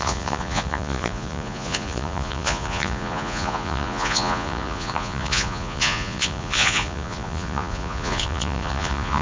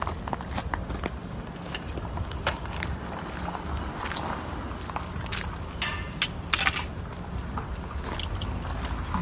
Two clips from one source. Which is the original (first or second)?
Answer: second